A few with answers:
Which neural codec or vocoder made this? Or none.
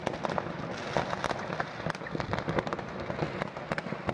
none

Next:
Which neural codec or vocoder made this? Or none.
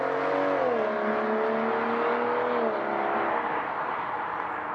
none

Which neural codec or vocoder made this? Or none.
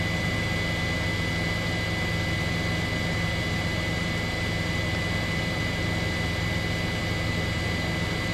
none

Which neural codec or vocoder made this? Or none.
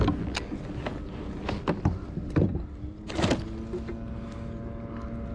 none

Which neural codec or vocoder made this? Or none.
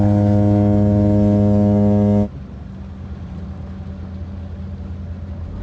none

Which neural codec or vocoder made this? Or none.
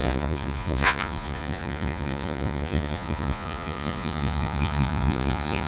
vocoder, Vocos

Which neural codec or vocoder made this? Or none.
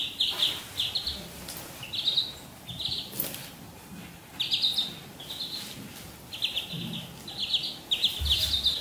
none